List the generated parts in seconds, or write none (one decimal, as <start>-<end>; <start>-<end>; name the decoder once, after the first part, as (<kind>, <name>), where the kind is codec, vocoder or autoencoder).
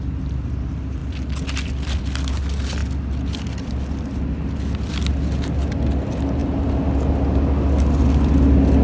none